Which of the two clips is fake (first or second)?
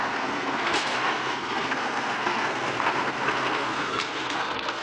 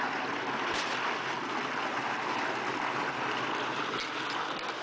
first